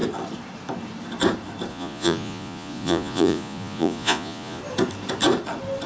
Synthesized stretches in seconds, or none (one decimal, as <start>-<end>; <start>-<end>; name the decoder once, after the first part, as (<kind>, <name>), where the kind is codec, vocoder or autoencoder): 1.7-4.6 (vocoder, Vocos)